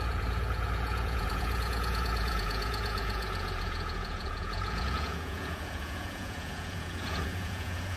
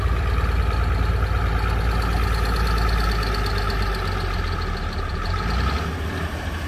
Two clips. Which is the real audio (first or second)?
second